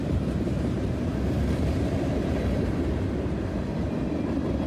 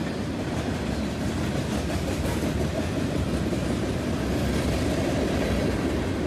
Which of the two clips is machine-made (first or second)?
first